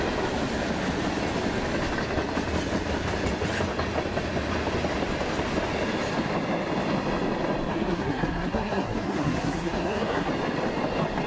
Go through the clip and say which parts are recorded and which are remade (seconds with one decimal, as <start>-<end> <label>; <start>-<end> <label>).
0.0-7.7 recorded; 7.7-10.3 remade; 10.3-11.3 recorded